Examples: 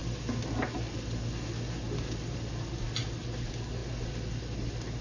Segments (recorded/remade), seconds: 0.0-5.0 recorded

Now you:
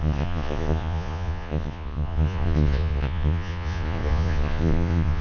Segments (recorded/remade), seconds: 0.0-5.2 remade

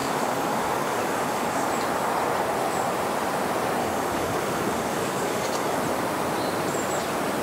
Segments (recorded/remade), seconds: 0.0-1.7 remade; 1.7-3.8 recorded; 3.8-5.8 remade; 5.8-7.4 recorded

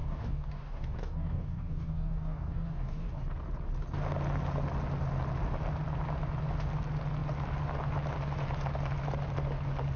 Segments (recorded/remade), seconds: 0.0-3.2 remade; 3.2-10.0 recorded